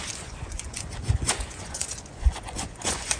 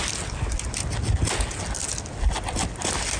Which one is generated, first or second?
first